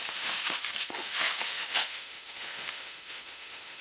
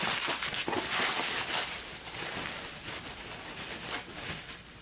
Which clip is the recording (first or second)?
second